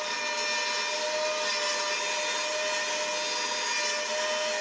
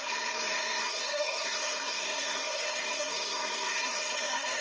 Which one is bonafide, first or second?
first